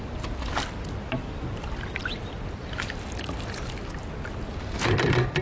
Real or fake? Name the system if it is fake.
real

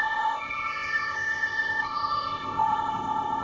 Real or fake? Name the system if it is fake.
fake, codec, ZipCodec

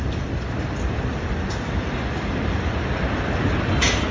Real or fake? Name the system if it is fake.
real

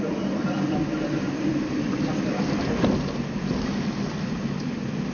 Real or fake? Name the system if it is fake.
real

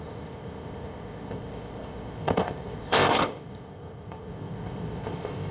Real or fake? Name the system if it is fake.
fake, codec, ZipCodec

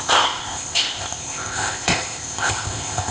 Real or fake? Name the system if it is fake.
fake, codec, ZipCodec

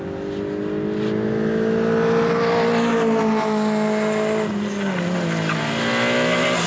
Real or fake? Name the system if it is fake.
real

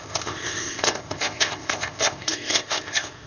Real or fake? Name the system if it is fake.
fake, codec, ZipCodec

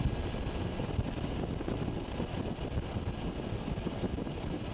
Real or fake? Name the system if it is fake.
real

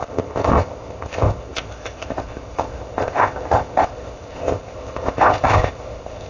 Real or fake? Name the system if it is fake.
fake, codec, ZipCodec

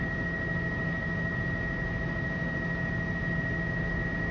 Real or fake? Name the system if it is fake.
real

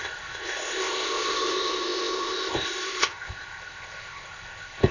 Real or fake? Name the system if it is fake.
fake, codec, ZipCodec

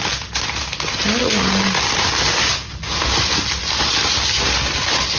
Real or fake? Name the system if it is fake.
real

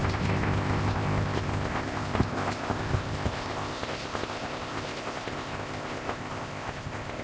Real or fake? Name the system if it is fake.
fake, codec, ZipCodec